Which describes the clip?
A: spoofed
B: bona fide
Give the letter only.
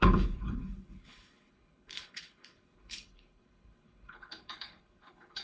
A